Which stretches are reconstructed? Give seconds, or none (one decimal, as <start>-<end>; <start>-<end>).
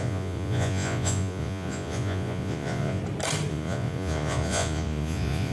0.0-3.0; 3.5-5.5